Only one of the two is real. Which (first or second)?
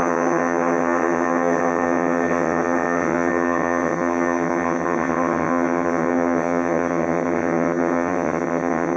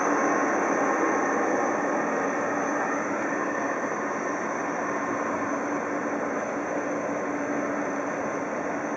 second